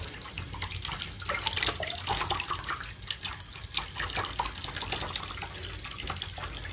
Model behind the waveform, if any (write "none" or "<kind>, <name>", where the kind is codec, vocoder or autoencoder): none